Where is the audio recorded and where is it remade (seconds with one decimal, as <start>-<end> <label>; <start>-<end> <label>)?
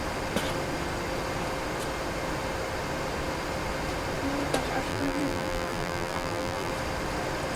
0.0-4.9 recorded; 4.9-6.7 remade; 6.7-7.6 recorded